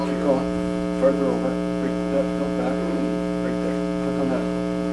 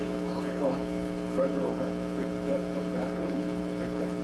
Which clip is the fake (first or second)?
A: second